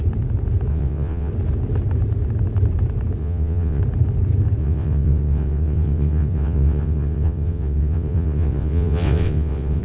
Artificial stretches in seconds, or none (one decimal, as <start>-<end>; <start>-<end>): 0.7-1.3; 3.2-3.8; 4.6-9.8